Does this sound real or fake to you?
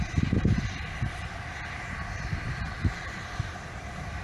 fake